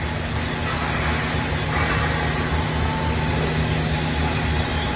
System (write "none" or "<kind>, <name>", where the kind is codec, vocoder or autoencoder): none